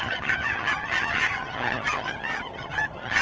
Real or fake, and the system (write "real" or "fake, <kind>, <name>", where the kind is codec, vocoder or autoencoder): fake, vocoder, HiFi-GAN